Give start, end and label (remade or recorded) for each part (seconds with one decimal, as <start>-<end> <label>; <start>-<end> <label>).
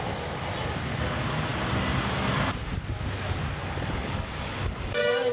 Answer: 0.0-3.6 recorded; 3.6-5.3 remade